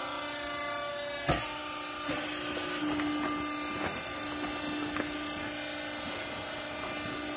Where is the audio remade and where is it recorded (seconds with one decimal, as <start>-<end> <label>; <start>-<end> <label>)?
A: 0.0-7.4 recorded